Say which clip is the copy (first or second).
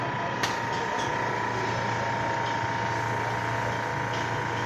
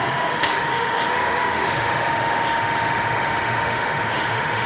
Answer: second